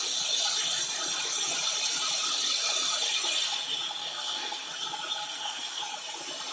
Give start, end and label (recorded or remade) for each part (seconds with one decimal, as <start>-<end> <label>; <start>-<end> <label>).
0.0-4.0 recorded; 4.0-4.7 remade; 4.7-5.2 recorded; 5.2-5.8 remade; 5.8-6.5 recorded